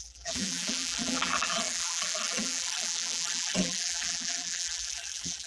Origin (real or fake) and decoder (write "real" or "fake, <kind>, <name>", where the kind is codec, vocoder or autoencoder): fake, vocoder, BigVGAN v2